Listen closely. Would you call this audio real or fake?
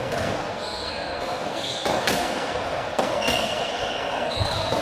fake